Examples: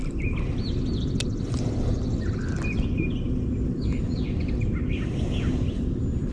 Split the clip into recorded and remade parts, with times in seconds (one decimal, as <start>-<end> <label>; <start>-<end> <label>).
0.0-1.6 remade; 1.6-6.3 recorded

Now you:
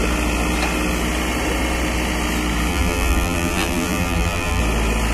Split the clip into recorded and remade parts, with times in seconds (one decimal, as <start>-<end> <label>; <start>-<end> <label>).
0.0-2.7 recorded; 2.7-4.6 remade; 4.6-5.1 recorded

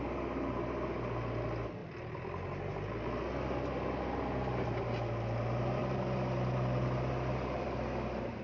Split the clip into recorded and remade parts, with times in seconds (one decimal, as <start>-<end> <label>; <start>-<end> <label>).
0.0-5.8 recorded; 5.8-8.4 remade

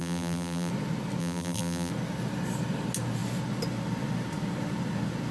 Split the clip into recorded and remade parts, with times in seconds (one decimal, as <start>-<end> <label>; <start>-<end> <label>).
0.0-0.7 remade; 0.7-1.2 recorded; 1.2-1.9 remade; 1.9-5.3 recorded